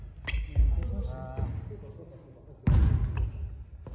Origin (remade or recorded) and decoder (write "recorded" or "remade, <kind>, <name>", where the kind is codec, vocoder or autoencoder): recorded